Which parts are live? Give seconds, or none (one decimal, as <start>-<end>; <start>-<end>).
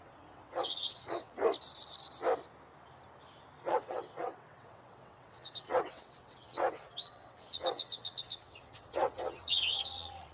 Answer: 1.4-3.6